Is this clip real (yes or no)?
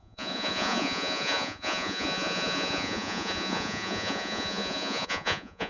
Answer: no